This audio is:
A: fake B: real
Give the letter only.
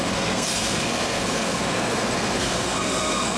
A